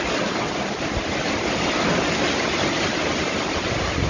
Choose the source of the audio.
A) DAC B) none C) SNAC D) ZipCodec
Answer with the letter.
B